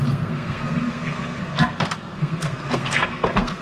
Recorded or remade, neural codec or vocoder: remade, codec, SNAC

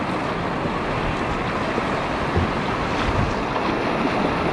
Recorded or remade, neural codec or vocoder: recorded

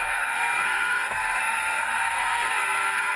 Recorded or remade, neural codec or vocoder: remade, codec, SNAC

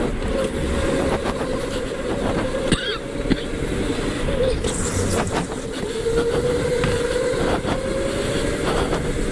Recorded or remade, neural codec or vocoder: recorded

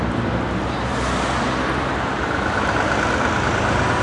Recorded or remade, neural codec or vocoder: recorded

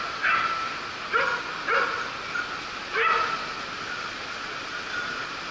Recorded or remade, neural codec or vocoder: recorded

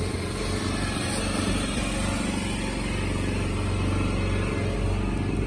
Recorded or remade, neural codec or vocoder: recorded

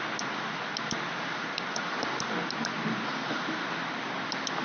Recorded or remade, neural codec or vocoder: recorded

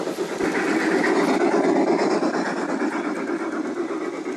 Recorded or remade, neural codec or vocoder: recorded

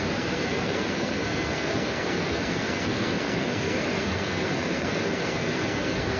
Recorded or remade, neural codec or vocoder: remade, codec, SNAC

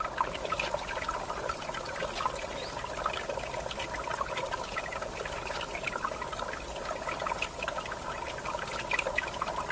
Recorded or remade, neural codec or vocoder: recorded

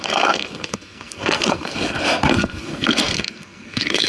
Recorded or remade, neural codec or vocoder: remade, codec, SNAC